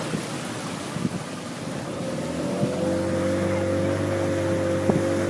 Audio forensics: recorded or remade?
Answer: recorded